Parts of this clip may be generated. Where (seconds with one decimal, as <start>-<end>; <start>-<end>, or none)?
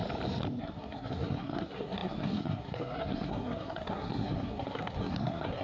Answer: 0.6-5.6